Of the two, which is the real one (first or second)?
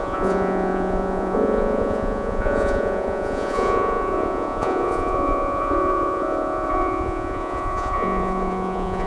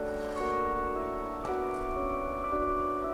second